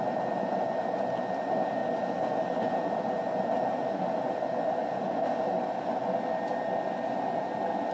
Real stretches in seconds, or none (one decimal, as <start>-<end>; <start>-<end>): 0.0-7.9